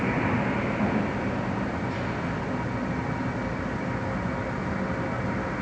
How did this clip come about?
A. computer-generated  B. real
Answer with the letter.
B